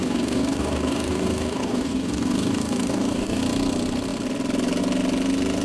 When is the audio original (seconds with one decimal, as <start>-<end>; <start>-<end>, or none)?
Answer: 3.4-5.6